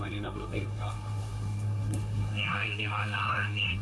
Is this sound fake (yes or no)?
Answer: yes